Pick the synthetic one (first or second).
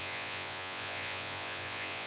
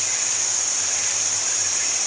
first